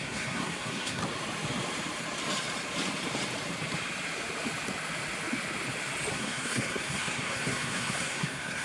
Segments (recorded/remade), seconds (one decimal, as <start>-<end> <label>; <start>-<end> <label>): 0.0-1.0 remade; 1.0-6.1 recorded; 6.1-8.6 remade